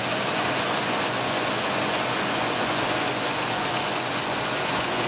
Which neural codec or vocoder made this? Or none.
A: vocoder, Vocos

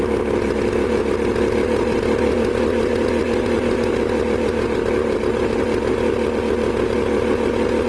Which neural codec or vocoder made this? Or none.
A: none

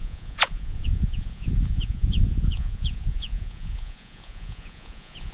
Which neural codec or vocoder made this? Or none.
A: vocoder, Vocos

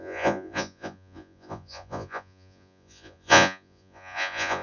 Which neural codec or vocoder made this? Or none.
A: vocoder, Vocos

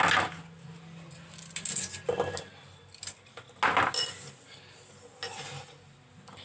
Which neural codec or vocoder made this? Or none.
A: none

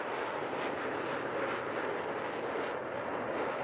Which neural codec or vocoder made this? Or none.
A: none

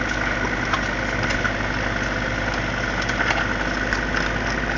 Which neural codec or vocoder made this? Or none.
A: none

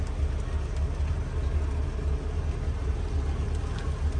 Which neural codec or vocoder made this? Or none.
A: none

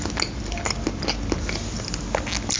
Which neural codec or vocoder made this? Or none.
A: none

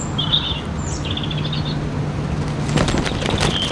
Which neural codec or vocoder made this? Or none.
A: none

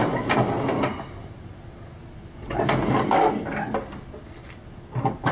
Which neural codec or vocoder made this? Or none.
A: none